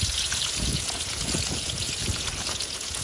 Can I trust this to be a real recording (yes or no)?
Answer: no